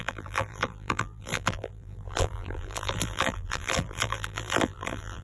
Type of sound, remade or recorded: remade